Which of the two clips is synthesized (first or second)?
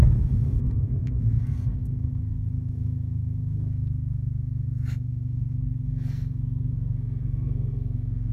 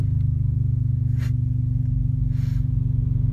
first